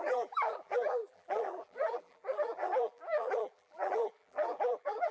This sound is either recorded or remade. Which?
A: remade